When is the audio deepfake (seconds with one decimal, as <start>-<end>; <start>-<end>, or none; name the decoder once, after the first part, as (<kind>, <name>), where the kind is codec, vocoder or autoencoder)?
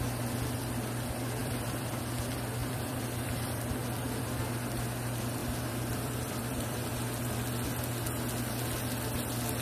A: 1.4-2.0 (vocoder, BigVGAN v2); 2.6-4.4; 5.4-6.9